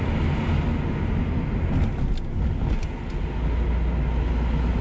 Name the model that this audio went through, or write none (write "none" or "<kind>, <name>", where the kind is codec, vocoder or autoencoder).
none